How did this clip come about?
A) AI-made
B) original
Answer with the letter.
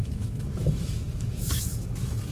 A